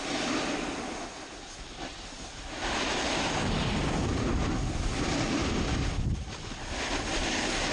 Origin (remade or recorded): recorded